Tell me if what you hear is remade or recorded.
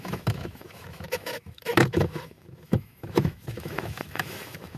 remade